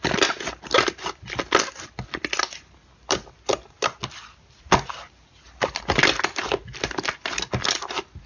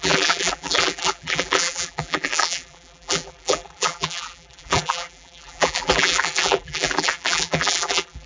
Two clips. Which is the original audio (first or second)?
first